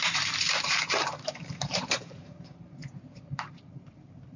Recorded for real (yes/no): no